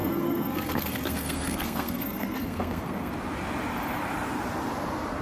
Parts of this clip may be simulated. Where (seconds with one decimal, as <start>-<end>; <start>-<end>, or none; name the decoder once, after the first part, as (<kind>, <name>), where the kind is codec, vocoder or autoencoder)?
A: 0.0-3.1 (codec, SNAC)